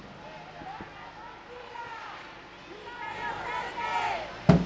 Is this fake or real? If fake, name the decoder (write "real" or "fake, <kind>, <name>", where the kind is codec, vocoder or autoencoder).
real